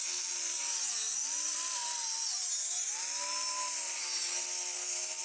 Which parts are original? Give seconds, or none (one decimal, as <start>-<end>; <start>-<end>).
0.0-5.2